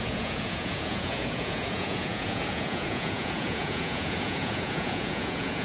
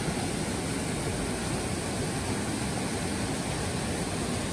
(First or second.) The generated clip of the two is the first